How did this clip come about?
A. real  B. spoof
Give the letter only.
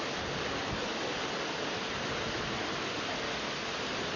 A